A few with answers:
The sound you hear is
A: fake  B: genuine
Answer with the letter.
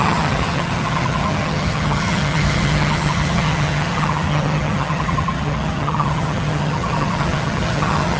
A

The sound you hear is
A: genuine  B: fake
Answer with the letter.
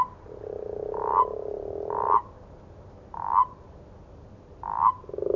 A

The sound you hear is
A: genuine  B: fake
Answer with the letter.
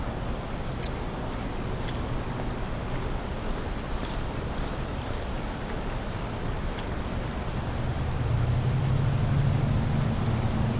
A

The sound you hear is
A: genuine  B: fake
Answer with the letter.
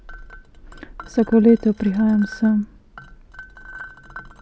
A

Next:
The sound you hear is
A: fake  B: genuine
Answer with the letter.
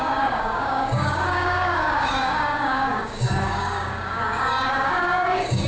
A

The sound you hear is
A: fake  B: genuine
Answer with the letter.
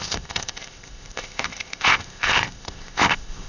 A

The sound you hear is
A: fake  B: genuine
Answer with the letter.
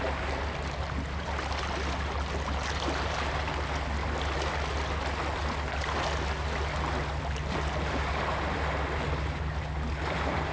B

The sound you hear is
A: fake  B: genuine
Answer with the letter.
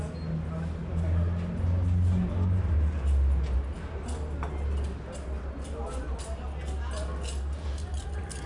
B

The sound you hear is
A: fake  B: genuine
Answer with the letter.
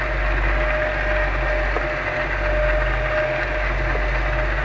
B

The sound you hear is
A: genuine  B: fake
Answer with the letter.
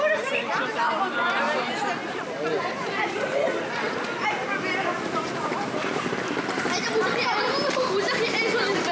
A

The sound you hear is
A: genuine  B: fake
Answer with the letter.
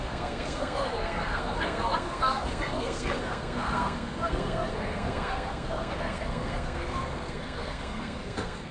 B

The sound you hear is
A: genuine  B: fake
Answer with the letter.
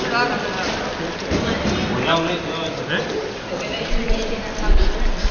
A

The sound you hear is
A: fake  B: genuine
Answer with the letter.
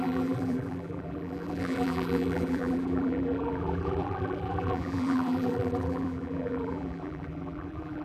A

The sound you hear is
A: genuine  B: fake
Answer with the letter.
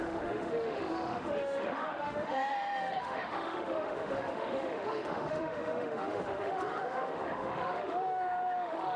B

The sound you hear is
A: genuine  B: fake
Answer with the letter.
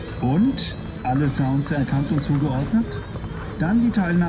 A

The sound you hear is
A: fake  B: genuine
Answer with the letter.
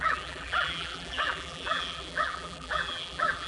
A